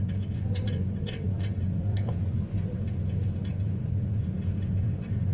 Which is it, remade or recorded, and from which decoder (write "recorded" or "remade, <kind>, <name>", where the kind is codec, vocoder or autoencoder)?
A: remade, vocoder, Vocos